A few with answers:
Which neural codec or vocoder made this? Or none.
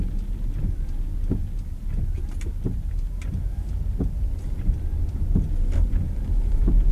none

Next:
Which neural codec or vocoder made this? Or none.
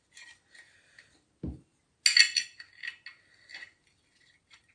none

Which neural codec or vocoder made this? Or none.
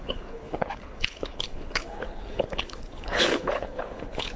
codec, HILCodec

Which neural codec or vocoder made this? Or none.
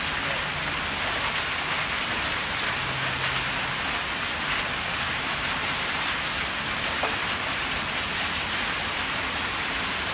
none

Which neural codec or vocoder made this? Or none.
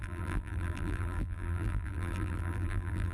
vocoder, BigVGAN v2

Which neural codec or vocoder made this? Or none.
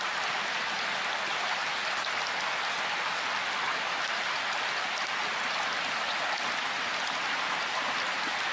none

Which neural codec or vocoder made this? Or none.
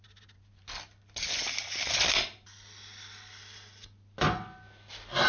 none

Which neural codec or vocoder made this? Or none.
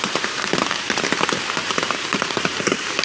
vocoder, BigVGAN v2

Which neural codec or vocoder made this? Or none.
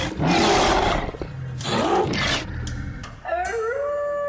none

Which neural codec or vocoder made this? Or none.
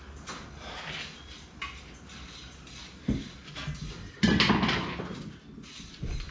none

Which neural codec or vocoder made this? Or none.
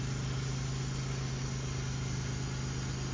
none